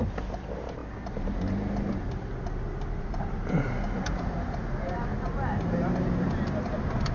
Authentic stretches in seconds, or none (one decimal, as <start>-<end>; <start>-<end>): 0.8-3.0; 5.1-7.1